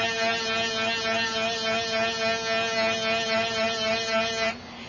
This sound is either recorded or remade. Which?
recorded